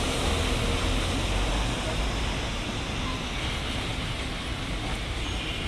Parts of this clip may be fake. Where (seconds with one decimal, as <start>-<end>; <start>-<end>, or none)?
none